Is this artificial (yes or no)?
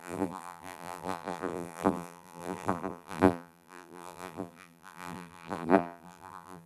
yes